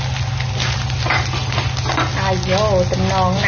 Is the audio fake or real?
real